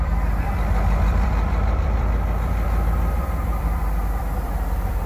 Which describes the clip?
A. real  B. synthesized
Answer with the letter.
B